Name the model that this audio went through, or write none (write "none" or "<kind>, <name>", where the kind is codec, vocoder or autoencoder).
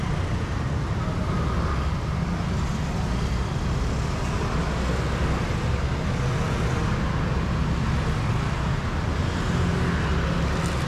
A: none